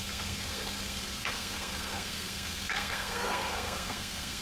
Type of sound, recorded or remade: remade